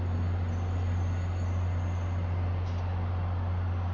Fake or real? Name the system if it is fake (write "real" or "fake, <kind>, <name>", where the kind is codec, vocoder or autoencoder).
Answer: real